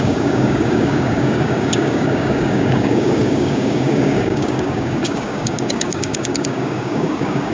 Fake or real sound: fake